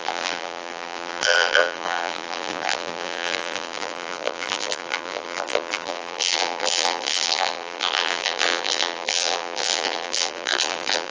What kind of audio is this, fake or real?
fake